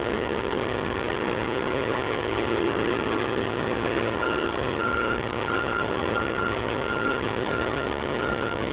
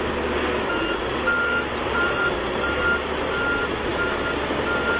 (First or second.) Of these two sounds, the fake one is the first